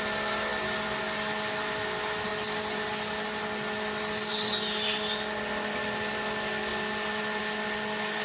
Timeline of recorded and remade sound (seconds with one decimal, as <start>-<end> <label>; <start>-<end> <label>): 0.0-8.2 recorded